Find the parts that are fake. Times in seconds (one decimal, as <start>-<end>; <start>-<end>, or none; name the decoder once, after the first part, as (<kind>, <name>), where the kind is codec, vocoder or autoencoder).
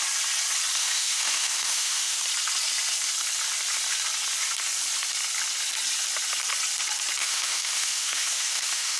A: 0.8-2.2 (autoencoder, DAC-VAE); 7.2-9.0